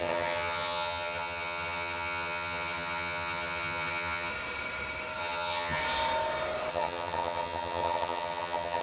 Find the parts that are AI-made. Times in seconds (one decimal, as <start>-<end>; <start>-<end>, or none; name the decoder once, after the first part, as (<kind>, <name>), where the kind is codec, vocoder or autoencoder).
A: 0.0-4.3 (vocoder, HiFi-GAN); 5.2-5.8; 6.7-8.8